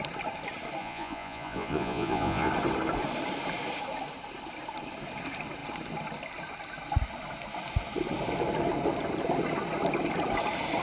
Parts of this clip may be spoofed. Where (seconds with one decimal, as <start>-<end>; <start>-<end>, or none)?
0.8-2.5